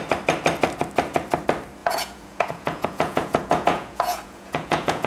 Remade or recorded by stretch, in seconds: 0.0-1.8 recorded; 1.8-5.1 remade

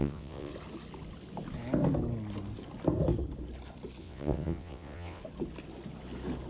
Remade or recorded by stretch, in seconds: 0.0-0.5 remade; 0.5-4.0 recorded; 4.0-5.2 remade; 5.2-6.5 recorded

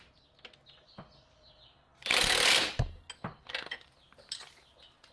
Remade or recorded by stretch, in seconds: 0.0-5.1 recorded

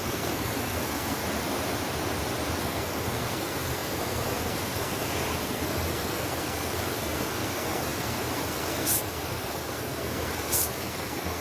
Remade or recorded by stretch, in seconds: 0.0-1.2 remade; 1.2-2.6 recorded; 2.6-11.4 remade